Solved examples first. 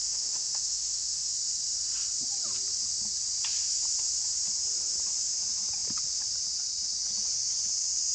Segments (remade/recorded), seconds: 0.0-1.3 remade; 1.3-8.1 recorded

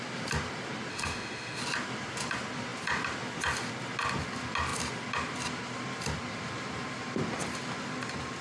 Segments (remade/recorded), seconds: 0.0-0.9 recorded; 0.9-1.6 remade; 1.6-8.4 recorded

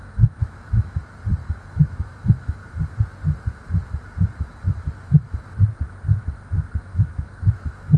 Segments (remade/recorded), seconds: 0.0-1.0 remade; 1.0-1.7 recorded; 1.7-2.6 remade; 2.6-6.8 recorded; 6.8-8.0 remade

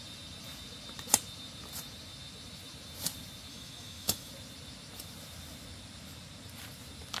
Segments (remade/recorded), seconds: 0.0-3.5 recorded; 3.5-4.3 remade; 4.3-7.2 recorded

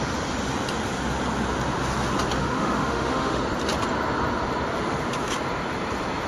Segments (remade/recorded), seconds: 0.0-2.4 recorded; 2.4-3.4 remade; 3.4-6.3 recorded